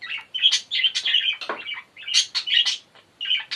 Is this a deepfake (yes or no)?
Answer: no